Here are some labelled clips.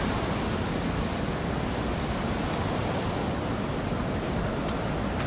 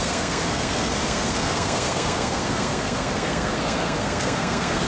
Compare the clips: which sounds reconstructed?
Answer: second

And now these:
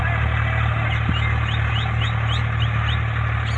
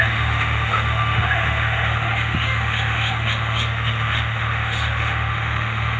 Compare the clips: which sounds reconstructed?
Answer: second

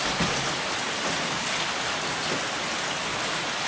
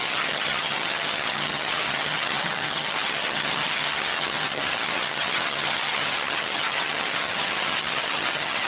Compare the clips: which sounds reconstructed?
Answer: second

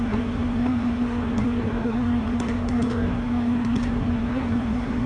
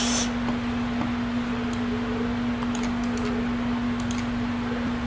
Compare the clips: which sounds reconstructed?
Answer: first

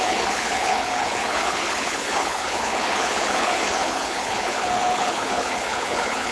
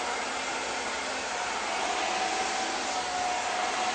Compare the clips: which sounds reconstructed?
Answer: first